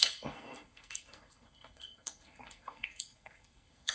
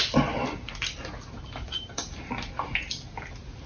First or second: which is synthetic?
first